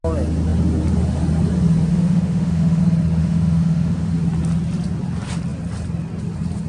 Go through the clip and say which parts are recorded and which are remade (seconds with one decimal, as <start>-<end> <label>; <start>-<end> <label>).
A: 0.0-1.9 recorded; 1.9-2.8 remade; 2.8-3.2 recorded; 3.2-4.1 remade; 4.1-6.7 recorded